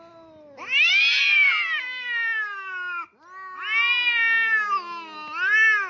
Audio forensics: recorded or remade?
recorded